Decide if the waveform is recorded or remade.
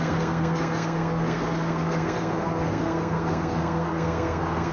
remade